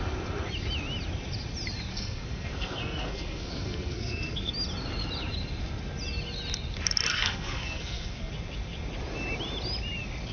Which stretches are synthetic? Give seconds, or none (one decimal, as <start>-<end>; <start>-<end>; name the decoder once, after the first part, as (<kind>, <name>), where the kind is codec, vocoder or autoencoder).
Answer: 1.9-4.5 (codec, SNAC); 7.1-8.3